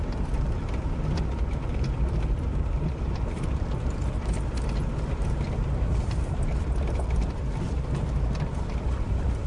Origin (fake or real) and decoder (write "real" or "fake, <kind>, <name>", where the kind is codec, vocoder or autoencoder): fake, vocoder, BigVGAN v2